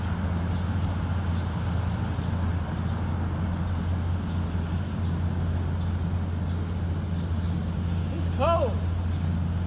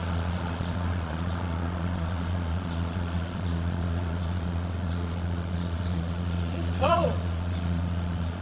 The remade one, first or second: second